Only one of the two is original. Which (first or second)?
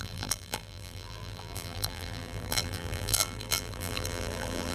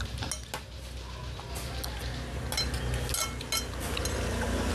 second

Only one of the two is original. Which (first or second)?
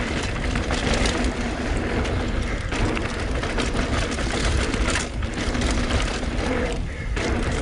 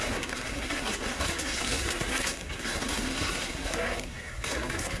first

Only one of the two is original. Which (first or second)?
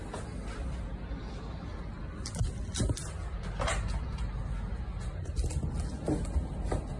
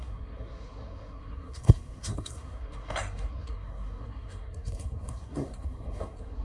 first